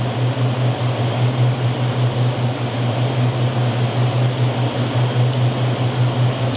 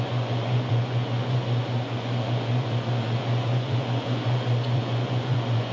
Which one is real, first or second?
first